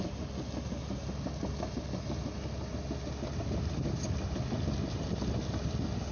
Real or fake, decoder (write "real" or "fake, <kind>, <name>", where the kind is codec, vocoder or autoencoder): real